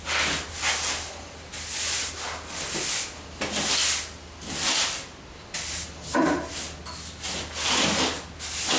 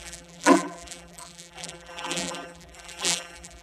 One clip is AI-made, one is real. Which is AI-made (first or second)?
second